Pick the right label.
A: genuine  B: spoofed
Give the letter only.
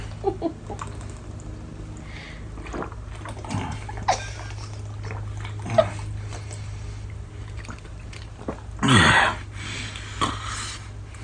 A